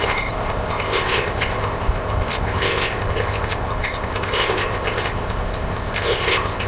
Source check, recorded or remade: remade